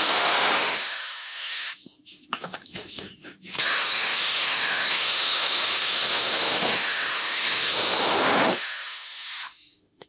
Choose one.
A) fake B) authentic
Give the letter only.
A